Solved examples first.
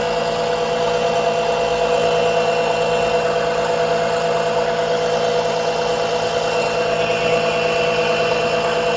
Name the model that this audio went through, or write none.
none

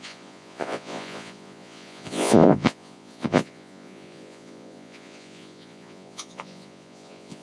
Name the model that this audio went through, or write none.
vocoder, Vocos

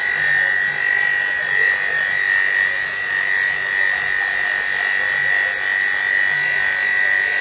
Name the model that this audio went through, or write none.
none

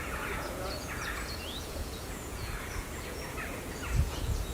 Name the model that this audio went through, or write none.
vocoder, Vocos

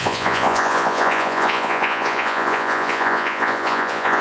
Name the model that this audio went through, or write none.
vocoder, Vocos